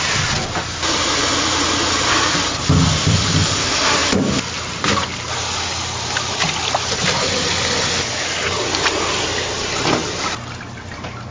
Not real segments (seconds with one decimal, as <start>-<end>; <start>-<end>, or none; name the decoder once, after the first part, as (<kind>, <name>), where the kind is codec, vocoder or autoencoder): none